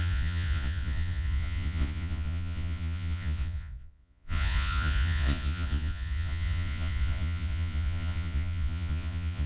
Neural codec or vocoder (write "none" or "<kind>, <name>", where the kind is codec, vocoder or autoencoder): vocoder, Vocos